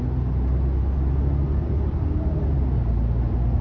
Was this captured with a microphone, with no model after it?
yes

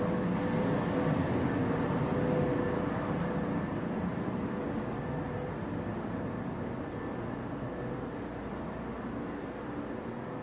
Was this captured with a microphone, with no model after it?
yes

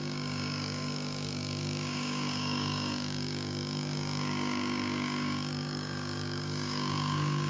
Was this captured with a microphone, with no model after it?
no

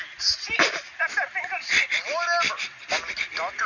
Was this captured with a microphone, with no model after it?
yes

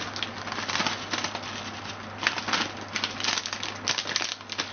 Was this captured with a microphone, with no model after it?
yes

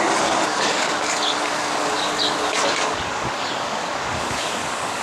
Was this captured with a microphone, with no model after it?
no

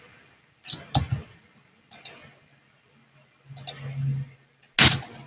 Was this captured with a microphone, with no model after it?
yes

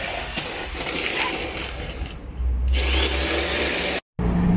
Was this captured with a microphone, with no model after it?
yes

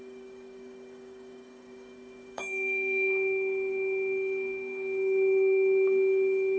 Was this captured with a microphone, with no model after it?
no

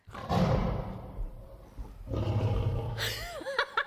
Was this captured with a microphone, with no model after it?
yes